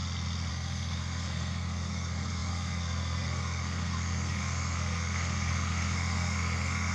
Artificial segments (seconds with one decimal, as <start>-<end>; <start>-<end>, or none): 0.5-6.9